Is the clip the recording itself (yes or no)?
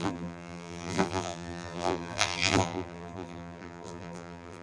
no